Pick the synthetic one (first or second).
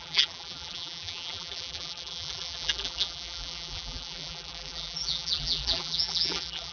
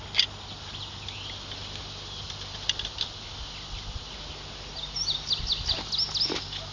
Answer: first